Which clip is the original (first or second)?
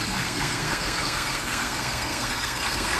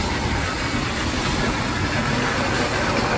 second